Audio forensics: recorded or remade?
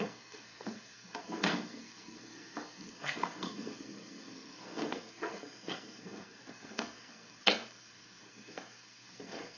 remade